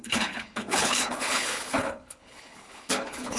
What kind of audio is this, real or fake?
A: fake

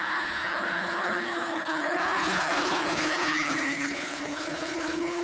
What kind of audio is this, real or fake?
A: fake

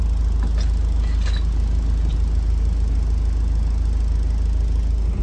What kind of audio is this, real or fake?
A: real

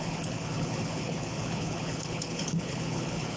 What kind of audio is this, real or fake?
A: fake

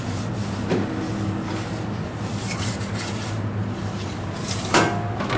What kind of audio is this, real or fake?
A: real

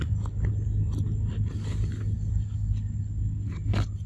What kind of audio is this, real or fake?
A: real